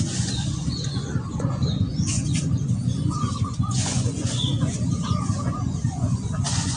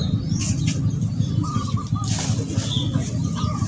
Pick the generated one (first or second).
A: first